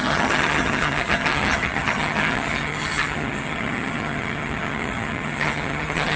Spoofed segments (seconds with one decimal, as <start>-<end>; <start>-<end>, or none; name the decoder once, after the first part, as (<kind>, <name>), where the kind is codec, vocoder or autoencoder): 0.0-6.2 (vocoder, HiFi-GAN)